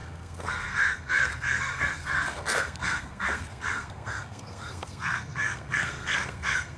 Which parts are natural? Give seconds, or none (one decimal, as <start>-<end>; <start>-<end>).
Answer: none

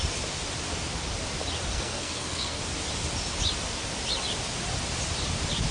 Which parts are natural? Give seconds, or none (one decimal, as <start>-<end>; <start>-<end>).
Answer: 0.0-1.7; 2.6-5.7

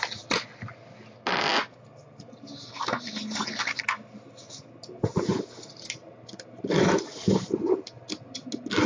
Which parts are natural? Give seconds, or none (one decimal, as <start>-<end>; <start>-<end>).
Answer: 0.0-5.3; 8.5-8.9

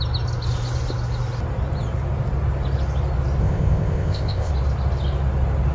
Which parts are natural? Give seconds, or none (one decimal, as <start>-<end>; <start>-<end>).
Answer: 0.0-3.4; 4.5-5.7

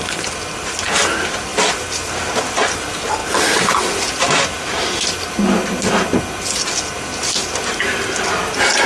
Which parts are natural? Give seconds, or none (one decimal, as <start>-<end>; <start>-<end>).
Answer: 0.0-8.9

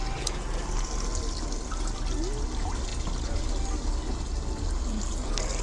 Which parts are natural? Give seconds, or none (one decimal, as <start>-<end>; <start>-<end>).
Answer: 0.0-5.6